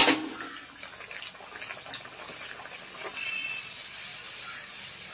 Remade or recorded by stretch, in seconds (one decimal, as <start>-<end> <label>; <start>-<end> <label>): 0.0-4.1 recorded; 4.1-5.1 remade